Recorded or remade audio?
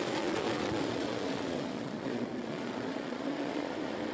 remade